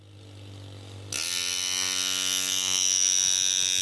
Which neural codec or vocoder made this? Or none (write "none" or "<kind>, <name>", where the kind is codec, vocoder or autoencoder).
none